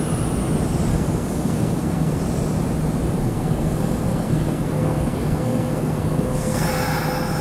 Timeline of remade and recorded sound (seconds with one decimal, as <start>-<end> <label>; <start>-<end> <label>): 0.0-0.9 recorded; 0.9-2.2 remade; 2.2-3.2 recorded; 3.2-6.7 remade; 6.7-7.4 recorded